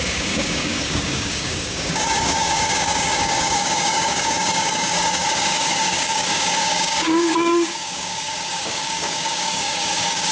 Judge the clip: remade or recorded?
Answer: remade